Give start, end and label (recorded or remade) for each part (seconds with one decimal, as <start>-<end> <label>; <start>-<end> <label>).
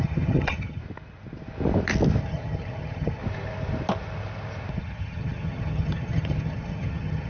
0.0-0.8 remade; 0.8-2.2 recorded; 2.2-3.2 remade; 3.2-4.7 recorded; 4.7-7.3 remade